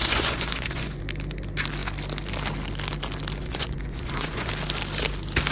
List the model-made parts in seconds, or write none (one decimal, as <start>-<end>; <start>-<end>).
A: 0.0-1.0; 3.4-4.5